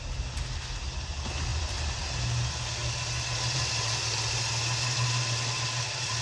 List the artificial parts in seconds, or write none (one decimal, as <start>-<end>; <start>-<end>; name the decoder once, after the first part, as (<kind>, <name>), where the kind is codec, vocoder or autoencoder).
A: none